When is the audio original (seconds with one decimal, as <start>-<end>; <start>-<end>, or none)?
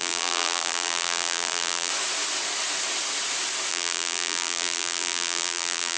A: 1.9-3.7